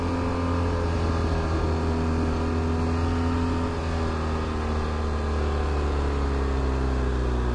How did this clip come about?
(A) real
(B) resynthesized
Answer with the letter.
A